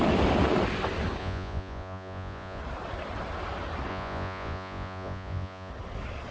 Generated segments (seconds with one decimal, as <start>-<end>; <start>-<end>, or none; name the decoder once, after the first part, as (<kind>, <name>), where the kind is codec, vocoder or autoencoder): 1.2-2.6 (vocoder, Vocos); 3.9-5.7